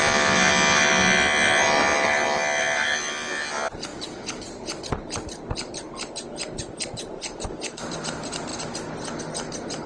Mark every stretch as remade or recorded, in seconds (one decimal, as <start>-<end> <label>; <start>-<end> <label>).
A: 0.0-9.9 recorded